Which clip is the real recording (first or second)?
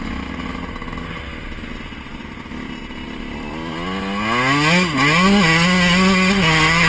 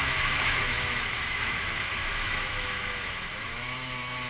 first